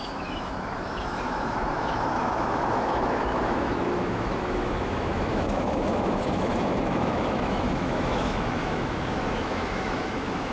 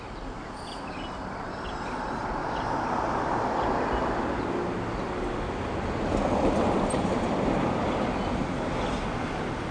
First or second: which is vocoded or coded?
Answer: first